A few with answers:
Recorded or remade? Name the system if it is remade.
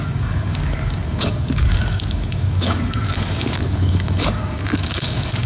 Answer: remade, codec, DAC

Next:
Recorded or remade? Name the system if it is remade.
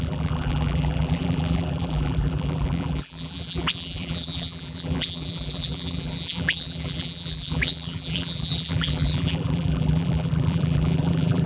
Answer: remade, vocoder, BigVGAN v2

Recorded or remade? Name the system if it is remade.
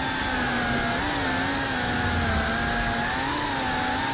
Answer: recorded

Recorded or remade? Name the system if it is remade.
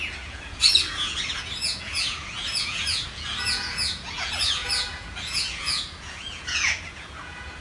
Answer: remade, vocoder, Vocos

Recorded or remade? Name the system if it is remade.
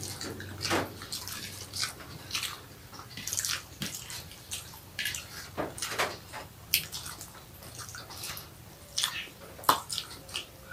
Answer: remade, vocoder, BigVGAN v2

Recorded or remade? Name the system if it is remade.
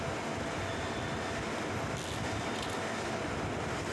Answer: recorded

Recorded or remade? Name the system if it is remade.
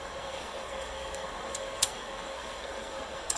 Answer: remade, codec, SNAC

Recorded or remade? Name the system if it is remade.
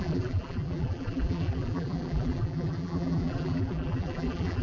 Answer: remade, vocoder, BigVGAN v2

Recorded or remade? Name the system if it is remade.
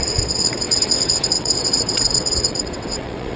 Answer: remade, vocoder, WaveNeXt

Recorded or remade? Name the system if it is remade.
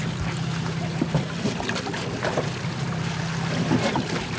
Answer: recorded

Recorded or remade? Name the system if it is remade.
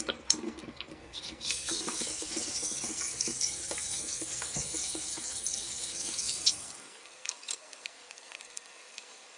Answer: remade, codec, SNAC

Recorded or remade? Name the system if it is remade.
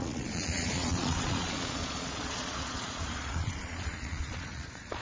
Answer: remade, vocoder, Vocos